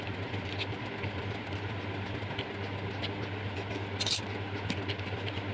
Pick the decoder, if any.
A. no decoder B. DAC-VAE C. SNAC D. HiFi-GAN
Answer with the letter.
A